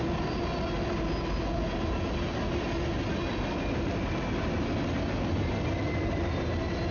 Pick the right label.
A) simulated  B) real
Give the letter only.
B